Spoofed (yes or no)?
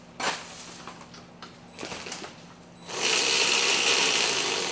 no